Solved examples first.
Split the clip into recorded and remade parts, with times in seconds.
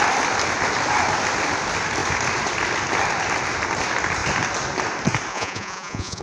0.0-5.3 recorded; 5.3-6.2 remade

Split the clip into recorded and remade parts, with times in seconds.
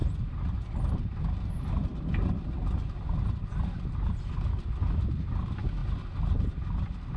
0.0-7.2 recorded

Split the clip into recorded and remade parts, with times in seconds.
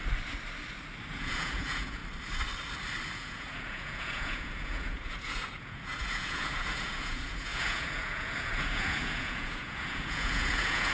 0.0-1.1 recorded; 1.1-2.0 remade; 2.0-3.1 recorded; 3.1-10.9 remade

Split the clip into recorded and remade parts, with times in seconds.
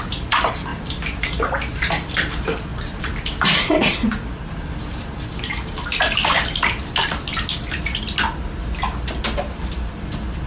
0.0-0.7 remade; 0.7-1.2 recorded; 1.2-5.9 remade; 5.9-9.2 recorded; 9.2-10.5 remade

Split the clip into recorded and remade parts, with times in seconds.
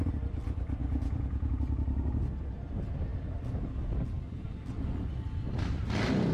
0.0-0.8 recorded; 0.8-1.5 remade; 1.5-6.3 recorded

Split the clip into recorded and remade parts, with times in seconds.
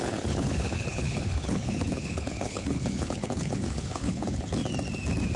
0.0-4.6 remade; 4.6-5.4 recorded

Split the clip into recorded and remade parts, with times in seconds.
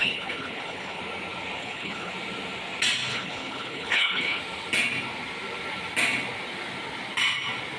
0.0-1.0 remade; 1.0-1.6 recorded; 1.6-2.1 remade; 2.1-3.1 recorded; 3.1-4.4 remade; 4.4-7.8 recorded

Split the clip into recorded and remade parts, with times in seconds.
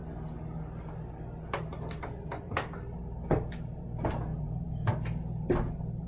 0.0-4.3 recorded; 4.3-4.9 remade; 4.9-6.1 recorded